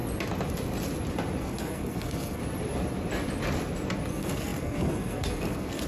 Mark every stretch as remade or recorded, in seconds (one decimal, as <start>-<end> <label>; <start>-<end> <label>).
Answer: 0.0-1.4 recorded; 1.4-2.4 remade; 2.4-4.1 recorded; 4.1-5.9 remade

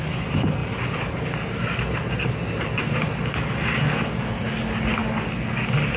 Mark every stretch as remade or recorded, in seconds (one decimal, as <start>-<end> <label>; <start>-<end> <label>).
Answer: 0.0-6.0 recorded